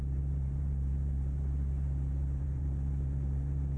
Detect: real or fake fake